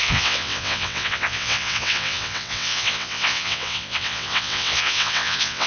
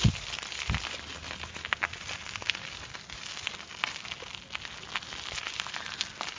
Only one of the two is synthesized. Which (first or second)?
first